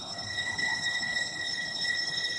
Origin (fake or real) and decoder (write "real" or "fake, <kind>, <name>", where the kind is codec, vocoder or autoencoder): fake, codec, HILCodec